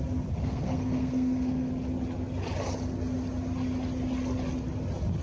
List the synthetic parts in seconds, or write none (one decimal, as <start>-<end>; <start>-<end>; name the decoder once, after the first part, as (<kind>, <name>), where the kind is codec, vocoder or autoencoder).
0.4-1.7 (codec, SNAC)